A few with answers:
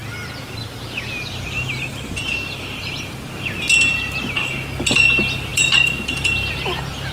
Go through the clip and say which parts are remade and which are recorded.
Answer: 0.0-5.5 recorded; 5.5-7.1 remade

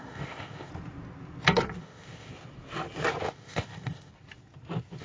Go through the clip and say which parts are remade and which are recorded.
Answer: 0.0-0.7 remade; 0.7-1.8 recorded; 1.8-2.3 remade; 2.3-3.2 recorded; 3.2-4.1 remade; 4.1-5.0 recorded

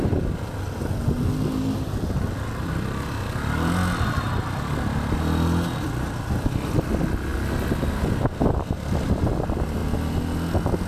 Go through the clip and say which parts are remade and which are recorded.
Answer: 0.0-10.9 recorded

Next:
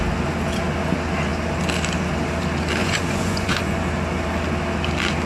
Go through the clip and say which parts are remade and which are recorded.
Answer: 0.0-2.8 recorded; 2.8-3.8 remade; 3.8-5.3 recorded

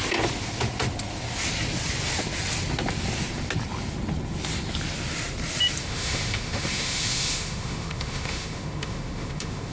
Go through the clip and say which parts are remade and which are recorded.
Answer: 0.0-5.8 recorded; 5.8-9.7 remade